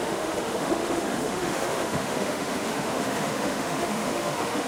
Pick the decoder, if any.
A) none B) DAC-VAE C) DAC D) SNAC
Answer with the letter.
B